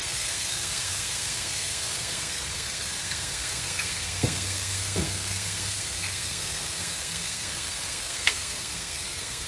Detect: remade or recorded remade